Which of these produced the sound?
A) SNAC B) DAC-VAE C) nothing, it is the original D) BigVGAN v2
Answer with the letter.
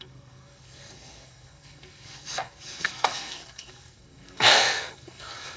A